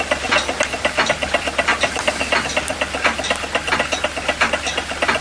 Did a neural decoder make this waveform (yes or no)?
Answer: no